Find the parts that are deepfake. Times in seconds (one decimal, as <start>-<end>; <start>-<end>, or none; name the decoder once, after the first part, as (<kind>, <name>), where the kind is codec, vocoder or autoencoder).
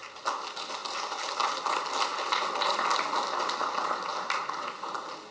none